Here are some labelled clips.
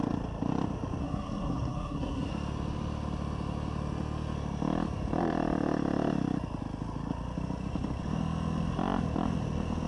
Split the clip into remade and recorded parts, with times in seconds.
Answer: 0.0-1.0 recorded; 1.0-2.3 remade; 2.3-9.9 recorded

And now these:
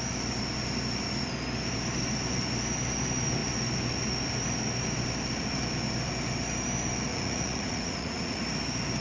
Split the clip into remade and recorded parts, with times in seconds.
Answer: 0.0-7.1 recorded; 7.1-8.4 remade; 8.4-9.0 recorded